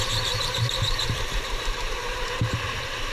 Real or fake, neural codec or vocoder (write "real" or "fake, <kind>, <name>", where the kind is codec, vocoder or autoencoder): fake, vocoder, BigVGAN v2